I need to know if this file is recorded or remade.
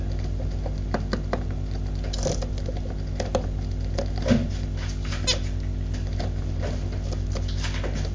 recorded